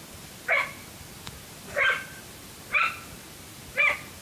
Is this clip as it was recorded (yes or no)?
no